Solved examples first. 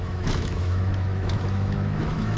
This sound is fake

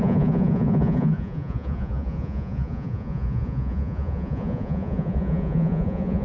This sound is fake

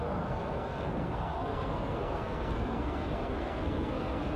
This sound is fake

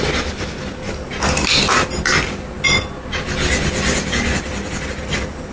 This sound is real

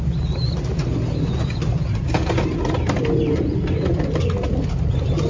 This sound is real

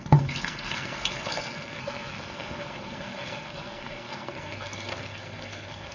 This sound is fake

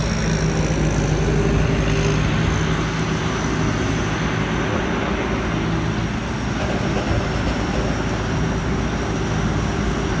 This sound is real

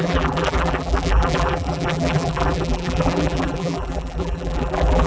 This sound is fake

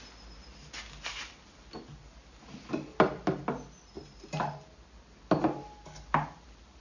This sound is real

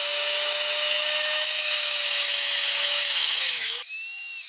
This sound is fake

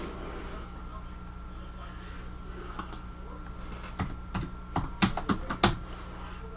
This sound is real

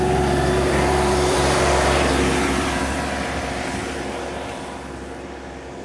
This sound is fake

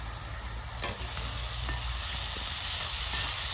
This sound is real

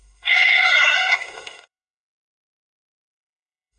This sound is fake